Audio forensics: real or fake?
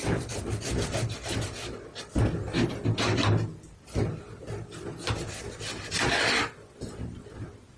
real